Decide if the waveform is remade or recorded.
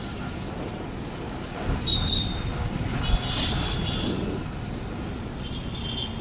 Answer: recorded